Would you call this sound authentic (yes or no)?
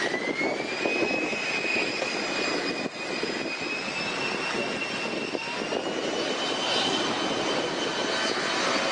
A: yes